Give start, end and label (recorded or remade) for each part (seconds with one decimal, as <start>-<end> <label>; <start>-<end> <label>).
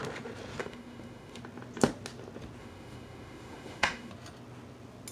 0.0-0.6 recorded; 0.6-1.4 remade; 1.4-2.6 recorded; 2.6-4.1 remade; 4.1-5.1 recorded